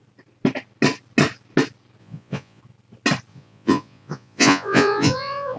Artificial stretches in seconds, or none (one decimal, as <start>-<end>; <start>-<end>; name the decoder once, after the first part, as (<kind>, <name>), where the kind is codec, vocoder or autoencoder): 2.0-2.6 (vocoder, Vocos); 3.3-5.6